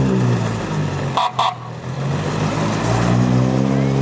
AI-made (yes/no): no